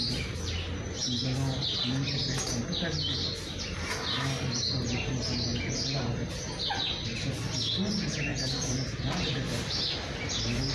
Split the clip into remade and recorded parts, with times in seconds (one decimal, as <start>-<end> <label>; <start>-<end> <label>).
0.0-5.5 recorded; 5.5-6.3 remade; 6.3-10.7 recorded